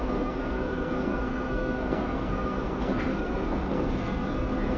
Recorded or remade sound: remade